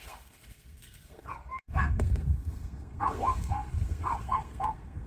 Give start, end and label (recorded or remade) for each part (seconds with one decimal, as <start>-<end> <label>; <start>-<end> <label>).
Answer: 0.0-5.1 remade